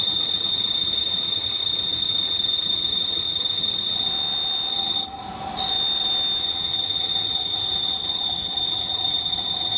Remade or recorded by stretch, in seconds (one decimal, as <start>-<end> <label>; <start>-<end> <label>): 0.0-4.1 remade; 4.1-4.7 recorded; 4.7-5.2 remade; 5.2-6.4 recorded; 6.4-9.8 remade